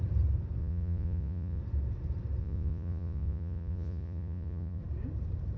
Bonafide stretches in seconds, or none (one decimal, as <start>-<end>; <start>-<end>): 0.0-0.6; 1.6-2.4; 4.8-5.6